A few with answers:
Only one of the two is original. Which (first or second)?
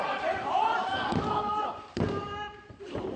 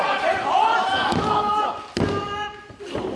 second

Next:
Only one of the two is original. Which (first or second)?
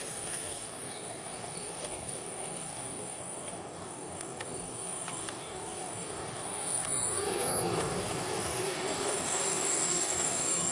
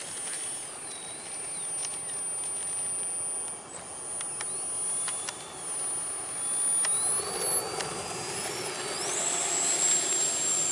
second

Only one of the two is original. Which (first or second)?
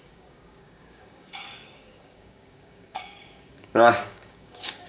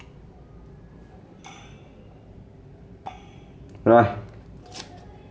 second